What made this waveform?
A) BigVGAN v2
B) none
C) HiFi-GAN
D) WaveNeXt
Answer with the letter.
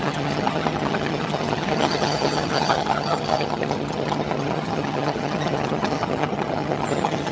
C